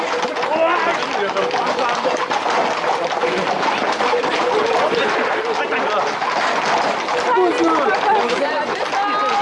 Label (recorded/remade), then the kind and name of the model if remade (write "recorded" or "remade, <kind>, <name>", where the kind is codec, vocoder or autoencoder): recorded